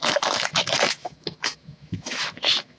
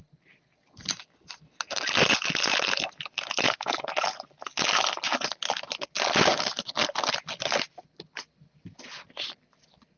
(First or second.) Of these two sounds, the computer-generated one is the first